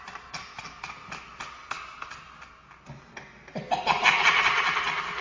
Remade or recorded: recorded